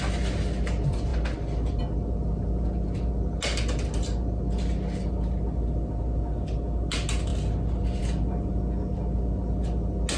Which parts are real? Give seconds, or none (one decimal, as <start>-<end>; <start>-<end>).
0.0-10.2